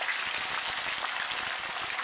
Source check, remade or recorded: recorded